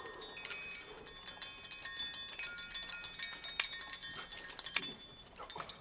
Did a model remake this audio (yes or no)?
no